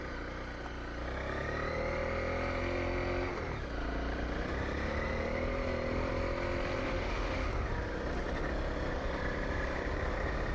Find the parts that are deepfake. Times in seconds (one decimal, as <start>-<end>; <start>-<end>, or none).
6.8-7.5